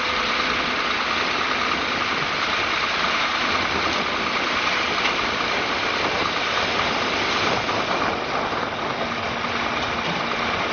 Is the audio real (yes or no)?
yes